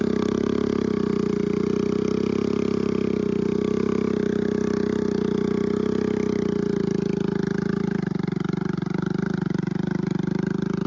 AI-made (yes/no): no